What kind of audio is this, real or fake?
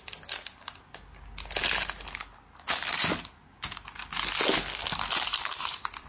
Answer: real